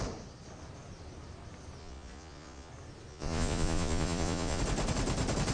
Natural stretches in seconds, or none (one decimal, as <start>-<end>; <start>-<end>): 0.0-1.8; 2.7-3.1; 4.6-5.5